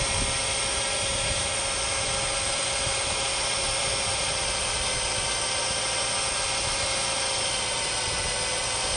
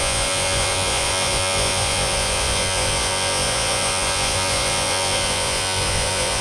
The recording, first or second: first